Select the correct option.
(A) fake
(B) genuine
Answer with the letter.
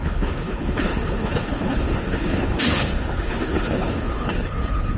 A